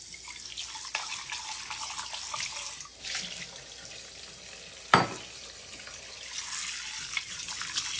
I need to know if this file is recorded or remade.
recorded